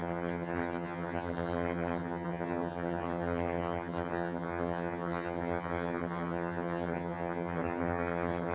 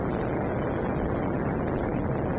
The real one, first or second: second